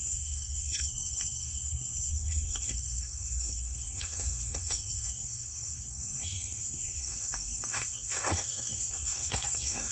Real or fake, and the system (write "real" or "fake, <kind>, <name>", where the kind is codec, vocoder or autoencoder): fake, codec, SNAC